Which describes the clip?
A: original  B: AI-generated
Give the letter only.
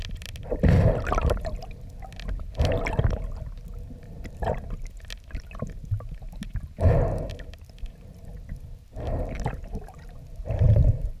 A